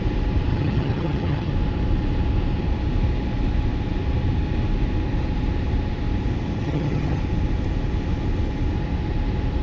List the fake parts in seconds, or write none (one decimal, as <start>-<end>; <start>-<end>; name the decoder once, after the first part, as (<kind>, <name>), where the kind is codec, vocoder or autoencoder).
0.5-1.5 (vocoder, HiFi-GAN); 6.6-7.2